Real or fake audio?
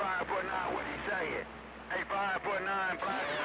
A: real